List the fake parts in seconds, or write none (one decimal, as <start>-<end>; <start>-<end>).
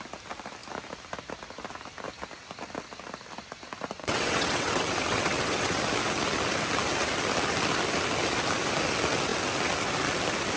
4.0-5.8